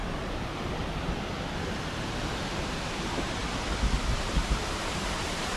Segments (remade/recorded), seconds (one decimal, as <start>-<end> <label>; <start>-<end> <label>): 0.0-2.9 recorded; 2.9-3.4 remade; 3.4-3.9 recorded; 3.9-5.6 remade